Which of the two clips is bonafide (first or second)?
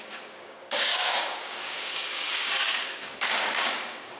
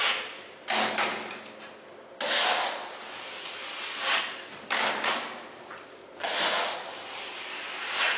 second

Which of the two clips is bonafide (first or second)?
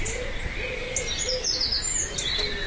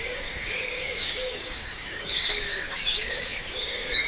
first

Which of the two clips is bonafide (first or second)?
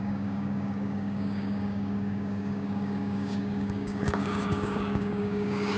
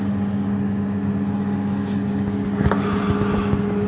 second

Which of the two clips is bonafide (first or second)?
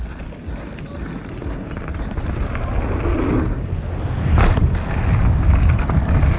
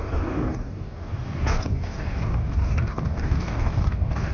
first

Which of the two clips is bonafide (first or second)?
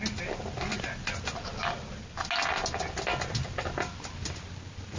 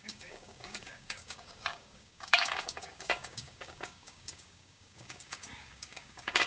first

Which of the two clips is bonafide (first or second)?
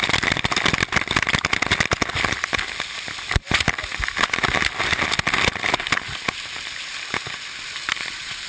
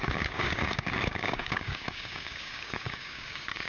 first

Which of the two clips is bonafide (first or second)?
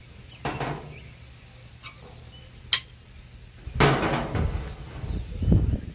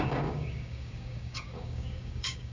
first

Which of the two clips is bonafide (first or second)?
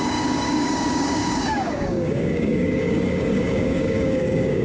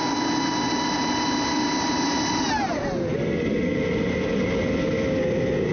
second